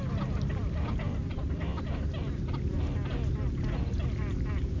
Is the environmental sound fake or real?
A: real